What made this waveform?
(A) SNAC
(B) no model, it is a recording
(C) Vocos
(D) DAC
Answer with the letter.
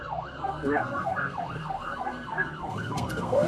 A